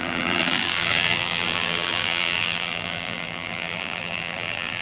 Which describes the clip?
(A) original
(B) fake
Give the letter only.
B